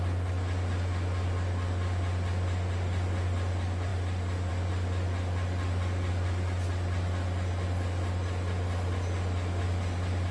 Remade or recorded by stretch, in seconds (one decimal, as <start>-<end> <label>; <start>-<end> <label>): 0.0-10.3 recorded